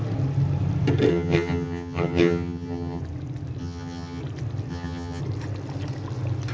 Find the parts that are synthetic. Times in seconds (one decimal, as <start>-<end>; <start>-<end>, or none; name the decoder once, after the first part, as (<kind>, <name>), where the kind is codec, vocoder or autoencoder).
1.1-3.0 (vocoder, HiFi-GAN); 3.6-4.2; 4.7-5.2